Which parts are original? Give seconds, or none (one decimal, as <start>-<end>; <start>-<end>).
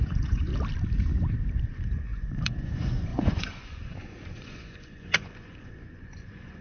0.5-1.6